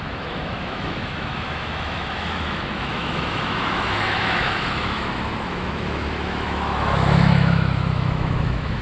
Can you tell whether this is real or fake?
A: fake